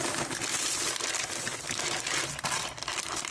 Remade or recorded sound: recorded